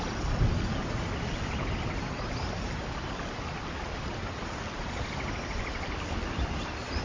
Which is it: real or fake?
real